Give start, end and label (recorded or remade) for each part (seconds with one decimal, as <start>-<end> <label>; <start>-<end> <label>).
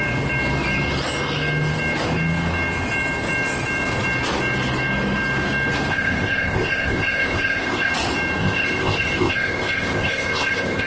0.0-5.9 recorded; 5.9-7.9 remade; 7.9-8.4 recorded; 8.4-10.9 remade